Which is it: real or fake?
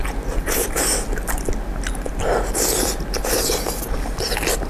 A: real